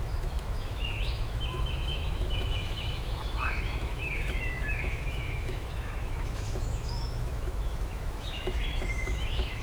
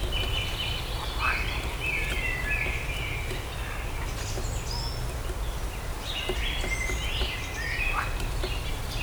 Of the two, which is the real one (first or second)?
second